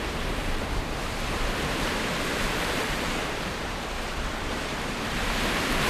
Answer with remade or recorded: remade